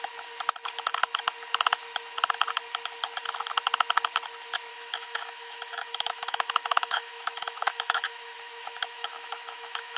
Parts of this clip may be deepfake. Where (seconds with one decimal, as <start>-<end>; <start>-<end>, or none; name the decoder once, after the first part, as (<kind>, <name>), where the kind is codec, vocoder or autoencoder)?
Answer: 4.7-10.0 (autoencoder, DAC-VAE)